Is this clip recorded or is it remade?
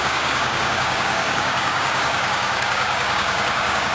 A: remade